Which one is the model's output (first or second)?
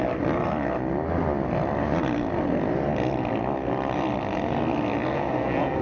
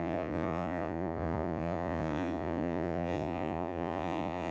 second